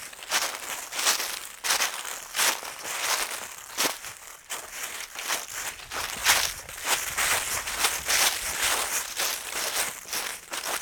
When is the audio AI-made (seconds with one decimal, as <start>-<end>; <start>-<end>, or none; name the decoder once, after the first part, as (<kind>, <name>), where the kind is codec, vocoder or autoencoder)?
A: none